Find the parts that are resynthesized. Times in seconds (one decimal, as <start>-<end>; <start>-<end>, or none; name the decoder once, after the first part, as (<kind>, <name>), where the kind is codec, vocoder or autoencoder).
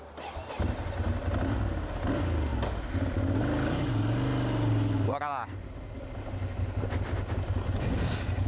none